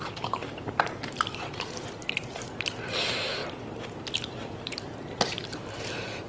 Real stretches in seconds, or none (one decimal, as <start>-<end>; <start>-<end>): 3.4-4.1